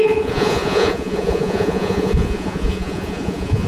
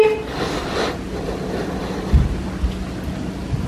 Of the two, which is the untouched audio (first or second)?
second